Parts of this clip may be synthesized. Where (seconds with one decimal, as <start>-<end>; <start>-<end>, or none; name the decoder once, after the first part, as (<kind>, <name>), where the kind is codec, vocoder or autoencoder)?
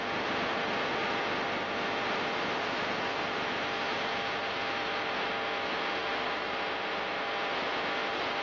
none